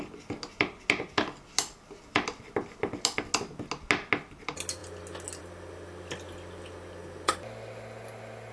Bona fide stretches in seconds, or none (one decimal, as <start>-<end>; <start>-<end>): 0.0-8.5